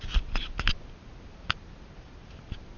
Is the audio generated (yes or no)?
no